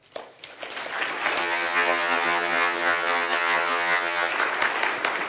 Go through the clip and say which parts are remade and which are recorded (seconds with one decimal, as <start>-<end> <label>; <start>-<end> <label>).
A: 0.0-1.4 recorded; 1.4-4.3 remade; 4.3-5.3 recorded